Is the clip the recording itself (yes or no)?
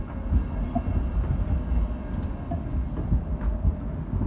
yes